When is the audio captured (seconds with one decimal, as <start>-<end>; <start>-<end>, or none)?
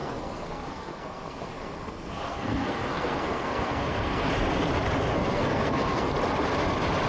4.3-5.1; 6.1-7.1